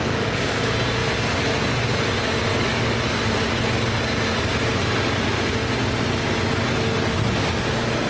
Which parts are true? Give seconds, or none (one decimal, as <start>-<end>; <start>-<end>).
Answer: 0.6-2.5; 3.3-8.1